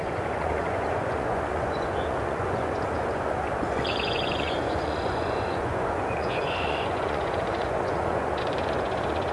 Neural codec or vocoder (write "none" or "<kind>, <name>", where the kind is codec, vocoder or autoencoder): vocoder, Vocos